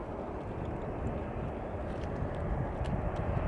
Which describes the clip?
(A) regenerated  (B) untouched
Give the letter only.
B